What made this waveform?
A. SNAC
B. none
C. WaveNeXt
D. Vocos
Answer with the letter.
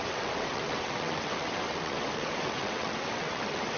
C